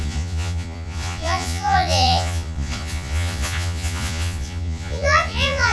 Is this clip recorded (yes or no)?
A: no